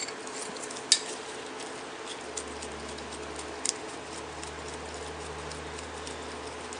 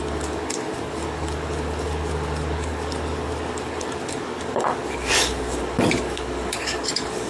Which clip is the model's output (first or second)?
second